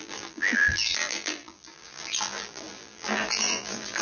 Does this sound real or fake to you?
fake